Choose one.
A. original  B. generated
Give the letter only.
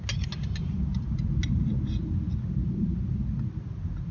A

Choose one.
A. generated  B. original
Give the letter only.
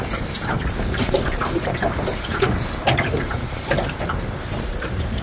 A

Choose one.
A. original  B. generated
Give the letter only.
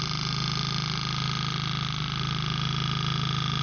A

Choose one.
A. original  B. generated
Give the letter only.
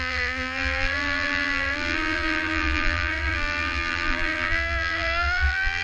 B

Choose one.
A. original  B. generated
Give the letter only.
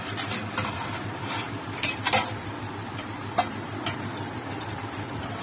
B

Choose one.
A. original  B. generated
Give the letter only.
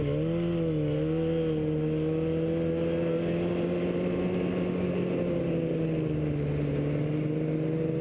A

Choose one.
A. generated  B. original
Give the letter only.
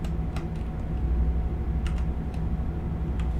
B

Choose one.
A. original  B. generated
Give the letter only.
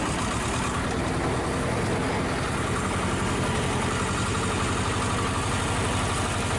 A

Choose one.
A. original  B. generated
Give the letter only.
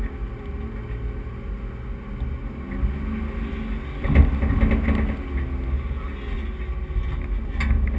A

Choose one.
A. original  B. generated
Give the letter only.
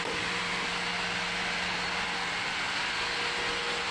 A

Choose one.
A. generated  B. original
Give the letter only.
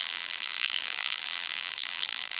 A